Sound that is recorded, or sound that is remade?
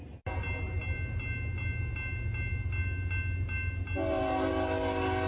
recorded